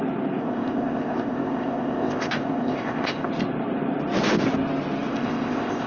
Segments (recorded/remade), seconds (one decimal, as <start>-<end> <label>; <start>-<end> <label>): 0.0-0.4 recorded; 0.4-3.3 remade; 3.3-5.1 recorded; 5.1-5.9 remade